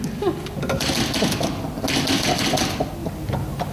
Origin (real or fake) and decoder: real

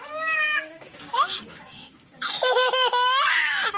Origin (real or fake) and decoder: fake, codec, DAC